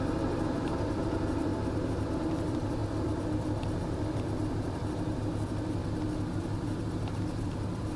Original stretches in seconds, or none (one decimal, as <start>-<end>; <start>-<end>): 5.8-6.4